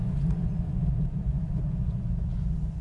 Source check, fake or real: fake